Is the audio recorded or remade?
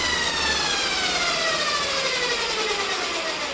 recorded